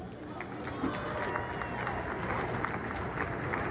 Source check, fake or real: real